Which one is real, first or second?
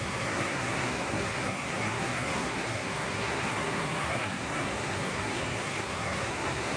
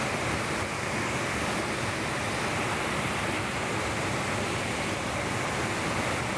second